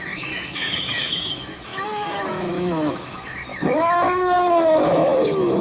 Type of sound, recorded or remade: remade